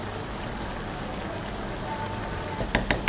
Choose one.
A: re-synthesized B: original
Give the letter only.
B